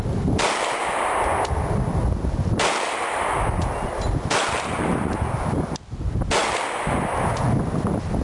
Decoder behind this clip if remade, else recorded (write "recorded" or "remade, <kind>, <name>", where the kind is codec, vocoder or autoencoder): recorded